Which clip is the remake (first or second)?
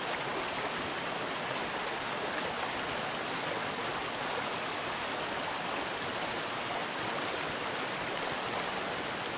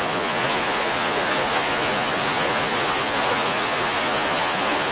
second